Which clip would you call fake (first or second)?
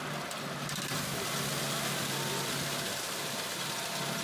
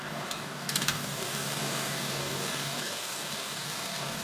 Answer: second